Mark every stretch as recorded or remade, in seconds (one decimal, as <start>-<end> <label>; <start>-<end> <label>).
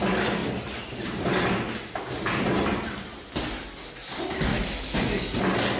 0.0-4.5 recorded; 4.5-5.2 remade; 5.2-5.8 recorded